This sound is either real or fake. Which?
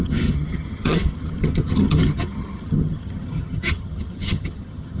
fake